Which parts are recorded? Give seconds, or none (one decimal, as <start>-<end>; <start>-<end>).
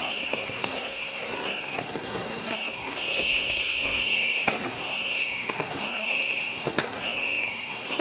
none